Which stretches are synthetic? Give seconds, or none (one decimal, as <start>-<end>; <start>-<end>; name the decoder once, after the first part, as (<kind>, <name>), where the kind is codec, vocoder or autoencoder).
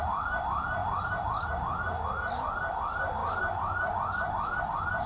none